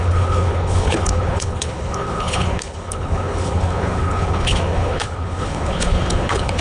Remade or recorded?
remade